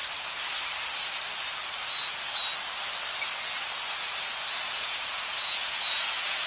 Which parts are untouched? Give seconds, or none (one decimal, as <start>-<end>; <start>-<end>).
0.0-3.9